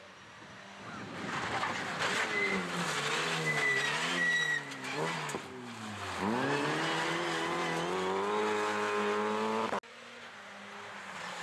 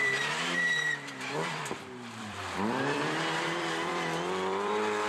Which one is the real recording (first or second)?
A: first